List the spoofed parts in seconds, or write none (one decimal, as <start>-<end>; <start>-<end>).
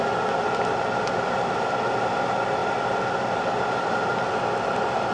none